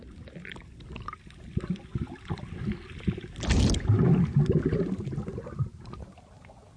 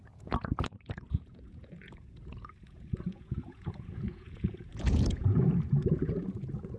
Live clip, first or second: first